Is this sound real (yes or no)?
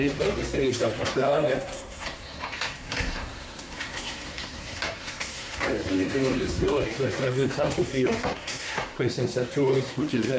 no